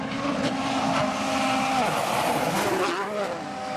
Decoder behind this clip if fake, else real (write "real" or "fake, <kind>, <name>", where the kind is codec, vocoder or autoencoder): real